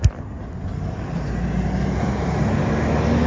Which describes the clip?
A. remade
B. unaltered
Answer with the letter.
B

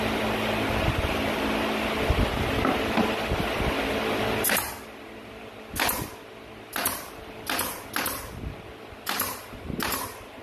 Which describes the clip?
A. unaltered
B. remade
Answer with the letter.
A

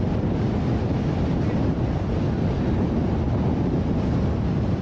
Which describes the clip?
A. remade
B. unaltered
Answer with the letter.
B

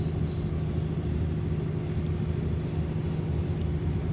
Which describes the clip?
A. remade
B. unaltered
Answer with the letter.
B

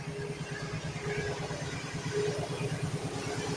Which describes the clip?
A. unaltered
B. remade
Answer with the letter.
A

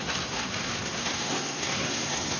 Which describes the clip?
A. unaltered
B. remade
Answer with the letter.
B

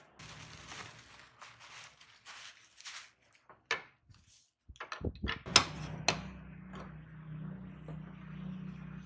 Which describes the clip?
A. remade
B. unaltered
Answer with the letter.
B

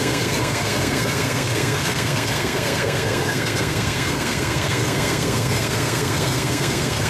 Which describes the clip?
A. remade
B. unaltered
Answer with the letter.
A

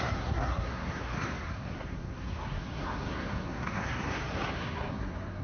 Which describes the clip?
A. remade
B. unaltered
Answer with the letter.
A